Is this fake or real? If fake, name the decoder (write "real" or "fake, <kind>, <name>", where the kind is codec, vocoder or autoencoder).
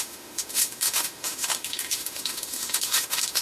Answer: fake, autoencoder, DAC-VAE